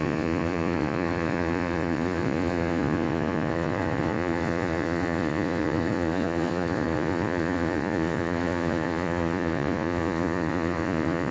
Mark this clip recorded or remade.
remade